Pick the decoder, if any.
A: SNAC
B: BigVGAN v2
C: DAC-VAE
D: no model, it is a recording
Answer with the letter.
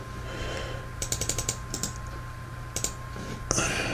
D